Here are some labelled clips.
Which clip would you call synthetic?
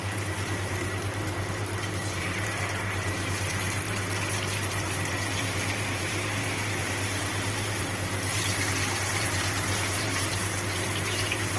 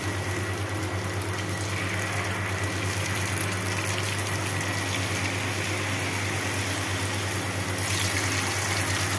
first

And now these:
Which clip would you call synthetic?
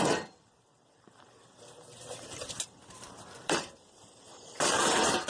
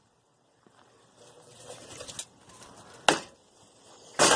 first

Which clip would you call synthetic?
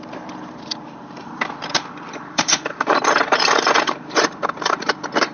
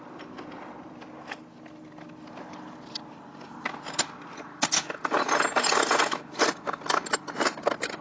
first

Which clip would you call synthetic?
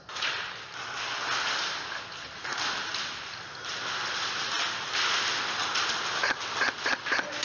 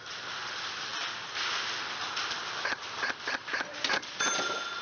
second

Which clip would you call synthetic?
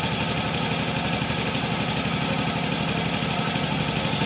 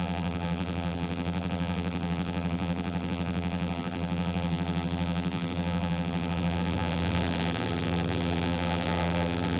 second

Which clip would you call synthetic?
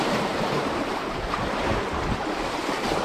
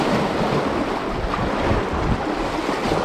first